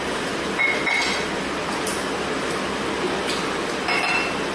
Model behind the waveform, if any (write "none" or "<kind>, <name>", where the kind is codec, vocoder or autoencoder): none